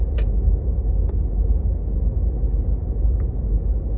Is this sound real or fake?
real